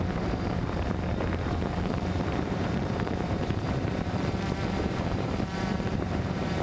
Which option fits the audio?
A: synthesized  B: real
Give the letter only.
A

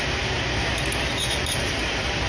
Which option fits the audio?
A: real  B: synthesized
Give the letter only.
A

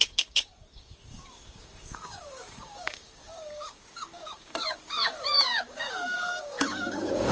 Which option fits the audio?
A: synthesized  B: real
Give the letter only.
A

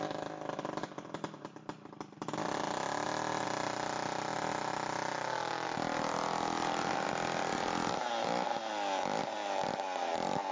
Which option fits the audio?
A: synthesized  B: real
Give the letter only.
B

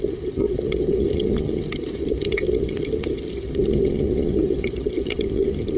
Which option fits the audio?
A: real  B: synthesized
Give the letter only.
B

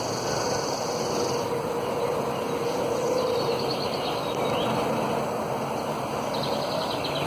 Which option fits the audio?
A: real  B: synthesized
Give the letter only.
A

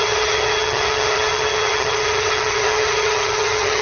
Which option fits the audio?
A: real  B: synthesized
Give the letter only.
B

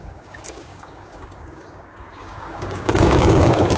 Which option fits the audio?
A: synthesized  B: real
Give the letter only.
A